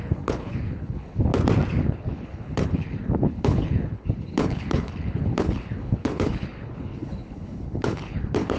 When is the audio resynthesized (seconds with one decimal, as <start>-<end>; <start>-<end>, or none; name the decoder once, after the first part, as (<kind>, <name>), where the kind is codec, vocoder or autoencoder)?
0.0-1.3 (codec, HILCodec); 1.8-8.6